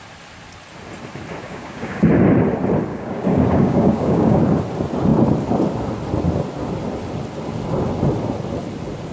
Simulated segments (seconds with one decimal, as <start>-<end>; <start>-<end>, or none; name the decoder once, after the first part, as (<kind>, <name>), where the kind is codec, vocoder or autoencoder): 1.4-2.1 (codec, DAC); 2.9-4.4